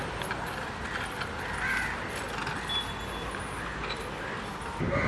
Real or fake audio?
real